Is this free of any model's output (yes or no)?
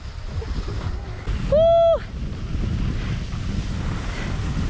yes